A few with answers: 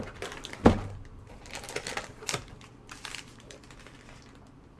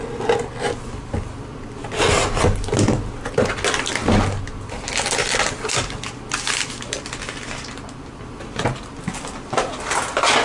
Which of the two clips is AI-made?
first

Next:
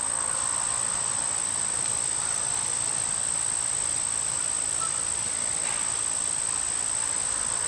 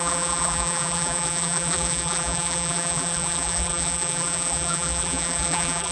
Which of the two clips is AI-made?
second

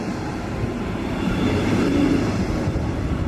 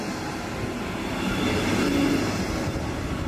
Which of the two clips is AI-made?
first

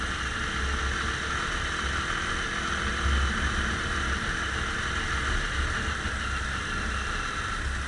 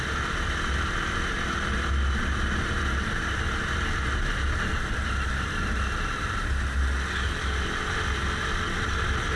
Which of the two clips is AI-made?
second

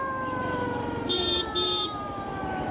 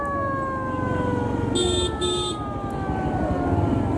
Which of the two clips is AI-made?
first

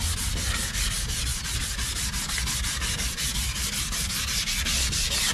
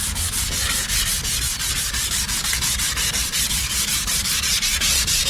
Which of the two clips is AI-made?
second